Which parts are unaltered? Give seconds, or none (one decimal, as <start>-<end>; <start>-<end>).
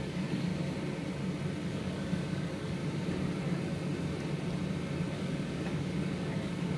0.5-1.7; 2.8-5.1